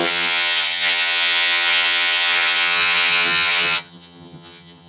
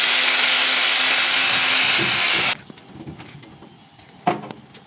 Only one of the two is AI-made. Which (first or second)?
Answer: first